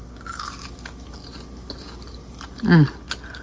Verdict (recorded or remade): recorded